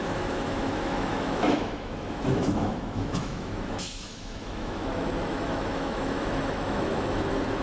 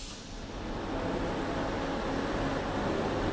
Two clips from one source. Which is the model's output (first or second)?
first